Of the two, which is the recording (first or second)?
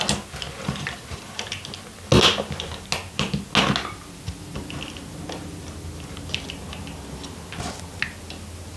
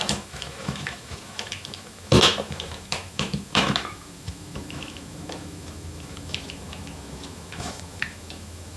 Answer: first